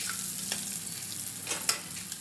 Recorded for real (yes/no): yes